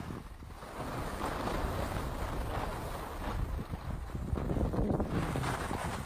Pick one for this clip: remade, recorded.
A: recorded